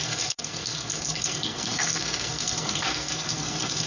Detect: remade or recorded remade